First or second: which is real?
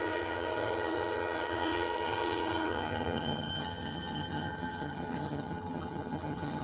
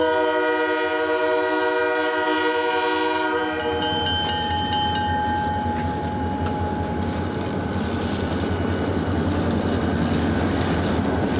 second